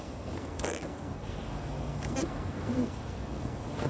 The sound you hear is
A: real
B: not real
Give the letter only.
B